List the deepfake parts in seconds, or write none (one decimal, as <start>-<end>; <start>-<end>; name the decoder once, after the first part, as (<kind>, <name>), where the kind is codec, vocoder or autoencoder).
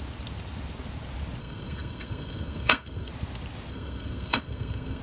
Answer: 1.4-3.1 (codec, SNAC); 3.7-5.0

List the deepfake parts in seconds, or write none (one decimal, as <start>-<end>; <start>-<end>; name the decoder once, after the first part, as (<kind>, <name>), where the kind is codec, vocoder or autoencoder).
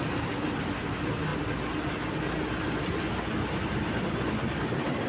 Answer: none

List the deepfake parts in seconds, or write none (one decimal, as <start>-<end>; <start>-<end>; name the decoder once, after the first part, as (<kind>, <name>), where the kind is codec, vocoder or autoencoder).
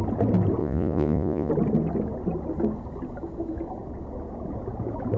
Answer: 0.6-1.5 (vocoder, Vocos)